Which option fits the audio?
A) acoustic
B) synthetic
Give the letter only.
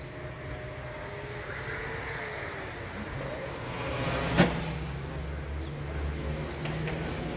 A